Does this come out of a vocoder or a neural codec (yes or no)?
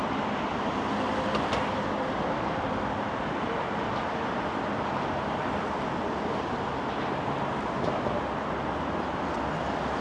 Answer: no